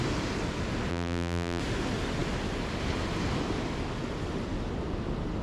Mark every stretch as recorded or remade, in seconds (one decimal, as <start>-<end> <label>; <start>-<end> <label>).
0.0-0.9 recorded; 0.9-1.6 remade; 1.6-5.4 recorded

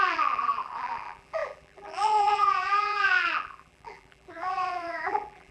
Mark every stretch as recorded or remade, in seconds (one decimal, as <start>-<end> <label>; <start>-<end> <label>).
0.0-5.5 remade